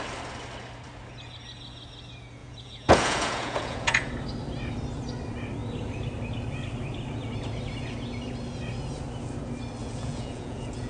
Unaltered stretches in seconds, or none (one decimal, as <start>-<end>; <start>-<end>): 0.0-2.4; 4.1-9.8

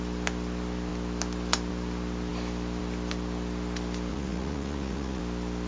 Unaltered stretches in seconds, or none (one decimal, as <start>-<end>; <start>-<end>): 0.0-4.1; 5.2-5.7

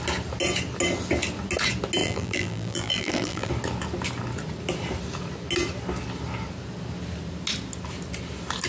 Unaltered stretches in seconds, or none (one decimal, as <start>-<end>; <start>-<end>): 0.0-2.0; 3.5-8.7

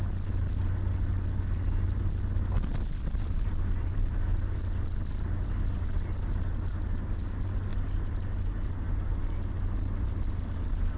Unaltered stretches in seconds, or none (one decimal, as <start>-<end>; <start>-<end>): 0.0-2.7; 5.7-7.7; 8.9-11.0

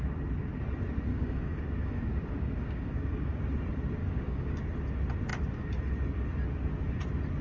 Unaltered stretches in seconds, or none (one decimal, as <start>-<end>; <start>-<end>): 0.0-1.1; 3.4-4.0; 4.6-7.4